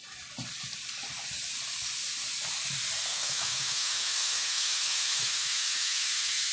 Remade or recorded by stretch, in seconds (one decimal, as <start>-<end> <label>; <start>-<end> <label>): 0.0-3.1 recorded; 3.1-6.5 remade